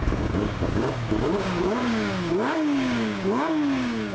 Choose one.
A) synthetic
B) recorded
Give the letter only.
A